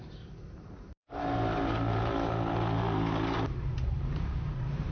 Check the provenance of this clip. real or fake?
fake